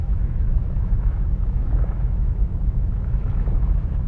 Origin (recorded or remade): remade